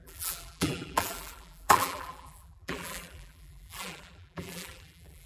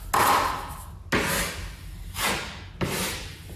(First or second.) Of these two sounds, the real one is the second